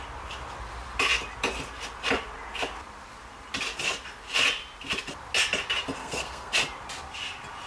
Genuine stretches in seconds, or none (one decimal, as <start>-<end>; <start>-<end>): 0.0-6.0; 6.5-7.7